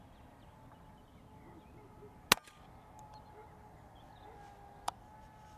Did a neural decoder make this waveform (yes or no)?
no